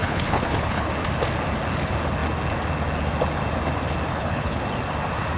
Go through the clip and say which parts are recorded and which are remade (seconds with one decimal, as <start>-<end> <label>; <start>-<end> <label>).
0.0-0.9 remade; 0.9-4.1 recorded; 4.1-4.6 remade; 4.6-5.4 recorded